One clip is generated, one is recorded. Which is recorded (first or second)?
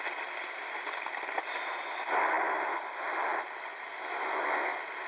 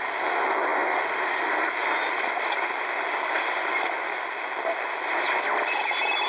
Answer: second